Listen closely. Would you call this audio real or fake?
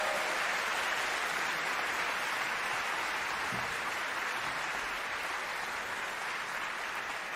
real